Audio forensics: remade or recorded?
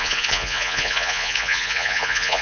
remade